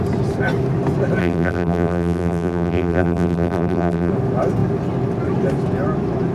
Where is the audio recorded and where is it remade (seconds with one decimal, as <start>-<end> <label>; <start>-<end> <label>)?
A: 0.0-1.2 recorded; 1.2-4.1 remade; 4.1-6.3 recorded